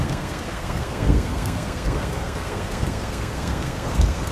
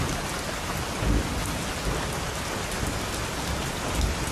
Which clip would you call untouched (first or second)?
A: second